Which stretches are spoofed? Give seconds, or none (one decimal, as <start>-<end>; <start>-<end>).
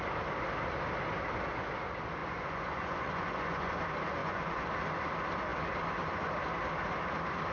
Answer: 2.2-3.8; 4.2-4.7